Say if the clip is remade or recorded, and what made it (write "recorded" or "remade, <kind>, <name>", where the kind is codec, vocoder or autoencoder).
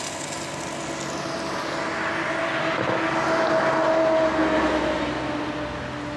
recorded